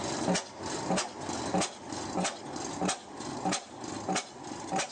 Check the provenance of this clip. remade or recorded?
recorded